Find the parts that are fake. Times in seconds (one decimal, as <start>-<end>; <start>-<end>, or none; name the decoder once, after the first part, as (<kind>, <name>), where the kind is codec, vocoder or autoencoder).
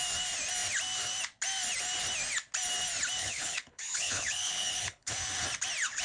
3.2-5.1 (codec, HILCodec)